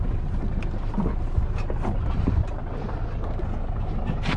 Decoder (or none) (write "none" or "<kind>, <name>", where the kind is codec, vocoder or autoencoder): none